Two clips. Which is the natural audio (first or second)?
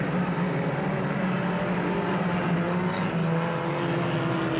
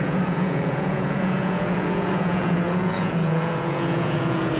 first